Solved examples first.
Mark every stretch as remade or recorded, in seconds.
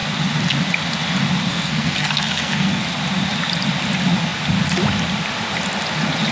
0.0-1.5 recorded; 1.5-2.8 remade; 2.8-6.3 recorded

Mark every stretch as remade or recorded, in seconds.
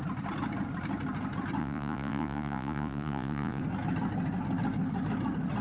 0.0-1.6 recorded; 1.6-3.6 remade; 3.6-5.6 recorded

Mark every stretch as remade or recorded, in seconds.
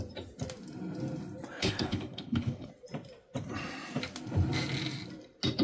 0.0-1.6 recorded; 1.6-2.7 remade; 2.7-5.6 recorded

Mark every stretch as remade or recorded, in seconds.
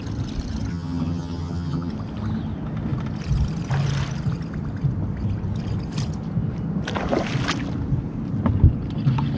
0.0-0.7 recorded; 0.7-1.9 remade; 1.9-9.4 recorded